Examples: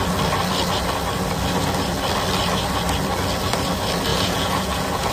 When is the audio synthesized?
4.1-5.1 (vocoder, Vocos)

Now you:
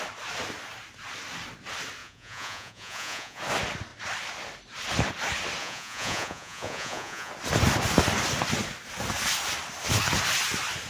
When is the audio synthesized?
2.0-3.4 (vocoder, Vocos); 5.6-7.3